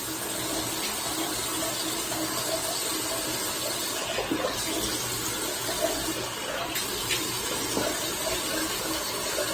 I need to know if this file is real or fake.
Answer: real